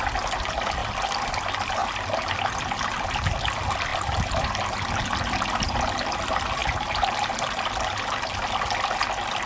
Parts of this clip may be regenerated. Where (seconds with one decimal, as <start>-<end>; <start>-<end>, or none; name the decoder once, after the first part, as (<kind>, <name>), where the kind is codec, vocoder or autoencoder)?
0.8-1.3 (vocoder, BigVGAN v2); 3.9-4.7